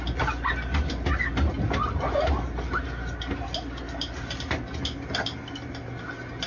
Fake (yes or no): no